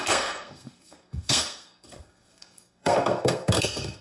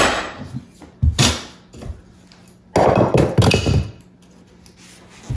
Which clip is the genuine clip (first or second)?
second